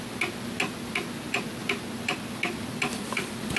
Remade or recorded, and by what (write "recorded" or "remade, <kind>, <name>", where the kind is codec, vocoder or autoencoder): recorded